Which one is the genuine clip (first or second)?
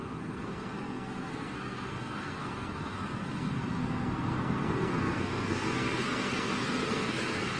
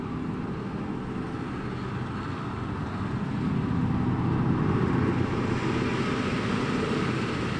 second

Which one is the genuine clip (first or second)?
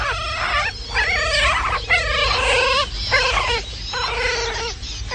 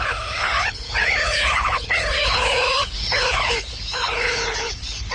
first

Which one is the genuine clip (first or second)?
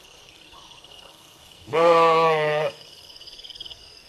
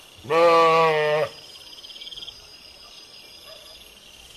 second